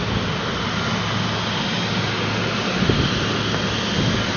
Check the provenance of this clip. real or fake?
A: real